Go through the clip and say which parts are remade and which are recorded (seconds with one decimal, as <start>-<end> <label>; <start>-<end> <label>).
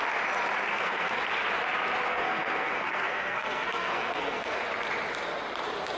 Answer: 0.0-0.7 recorded; 0.7-1.2 remade; 1.2-2.1 recorded; 2.1-4.6 remade; 4.6-6.0 recorded